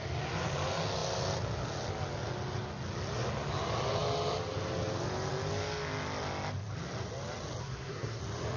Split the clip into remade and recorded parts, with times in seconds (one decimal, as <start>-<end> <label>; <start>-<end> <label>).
0.0-7.6 recorded; 7.6-8.2 remade; 8.2-8.6 recorded